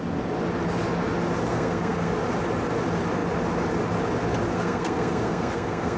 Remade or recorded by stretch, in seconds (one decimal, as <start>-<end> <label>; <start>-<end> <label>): 0.0-1.5 recorded; 1.5-2.1 remade; 2.1-4.5 recorded; 4.5-6.0 remade